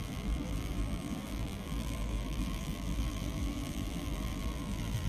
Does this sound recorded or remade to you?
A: remade